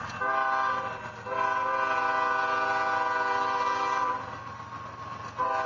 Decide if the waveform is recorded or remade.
recorded